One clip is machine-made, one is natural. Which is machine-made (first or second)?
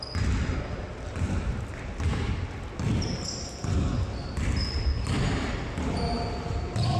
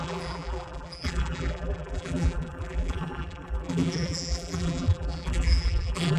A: second